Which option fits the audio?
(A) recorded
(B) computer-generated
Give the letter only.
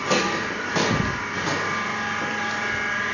A